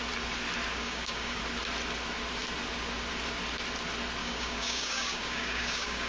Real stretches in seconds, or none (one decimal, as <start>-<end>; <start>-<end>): 0.0-0.7; 1.4-4.2